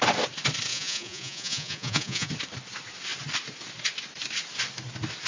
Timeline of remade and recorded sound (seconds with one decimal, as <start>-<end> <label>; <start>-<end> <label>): 0.0-0.7 recorded; 0.7-2.3 remade; 2.3-5.3 recorded

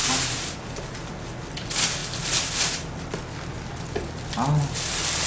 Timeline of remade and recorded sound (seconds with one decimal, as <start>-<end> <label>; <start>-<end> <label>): 0.0-5.3 recorded

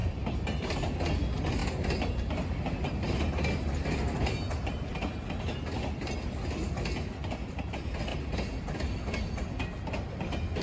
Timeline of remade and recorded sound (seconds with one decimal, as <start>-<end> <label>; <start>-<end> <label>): 0.0-10.6 recorded

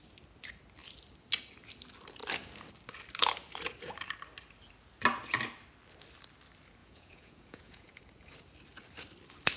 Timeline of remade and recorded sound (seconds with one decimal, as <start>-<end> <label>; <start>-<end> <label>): 0.0-6.8 recorded; 6.8-8.0 remade; 8.0-9.6 recorded

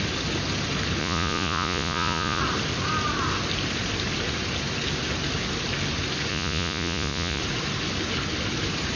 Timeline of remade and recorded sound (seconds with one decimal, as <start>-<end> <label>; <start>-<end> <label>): 0.0-1.0 recorded; 1.0-2.4 remade; 2.4-6.3 recorded; 6.3-7.4 remade; 7.4-9.0 recorded

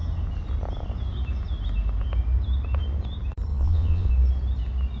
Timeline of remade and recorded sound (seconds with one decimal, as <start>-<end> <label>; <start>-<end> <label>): 0.0-3.5 recorded; 3.5-4.1 remade; 4.1-5.0 recorded

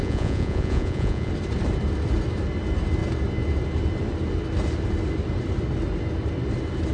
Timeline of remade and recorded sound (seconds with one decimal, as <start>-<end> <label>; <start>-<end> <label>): 0.0-1.3 remade; 1.3-6.9 recorded